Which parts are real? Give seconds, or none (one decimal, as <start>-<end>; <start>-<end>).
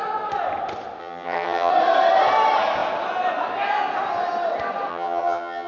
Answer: 0.0-1.0; 1.7-4.9